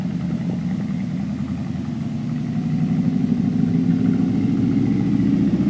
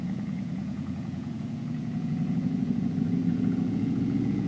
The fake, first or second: second